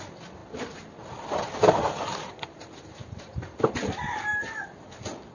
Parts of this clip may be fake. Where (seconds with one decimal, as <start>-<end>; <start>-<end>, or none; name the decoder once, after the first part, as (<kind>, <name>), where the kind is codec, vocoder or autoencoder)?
0.4-3.6 (vocoder, BigVGAN v2)